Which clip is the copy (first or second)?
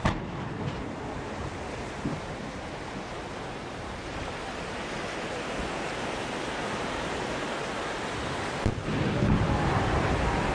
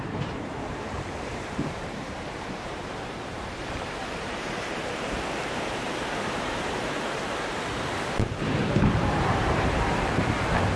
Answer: second